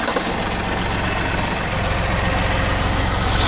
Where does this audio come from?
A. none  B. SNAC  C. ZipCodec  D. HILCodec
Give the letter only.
A